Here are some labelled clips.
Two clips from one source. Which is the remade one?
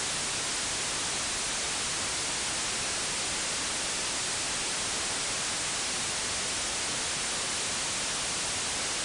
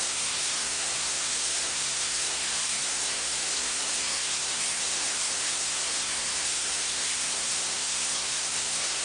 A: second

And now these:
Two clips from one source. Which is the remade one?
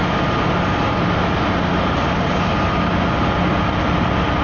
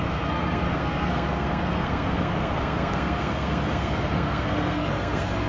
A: second